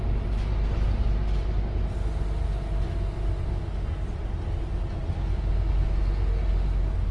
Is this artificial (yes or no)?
no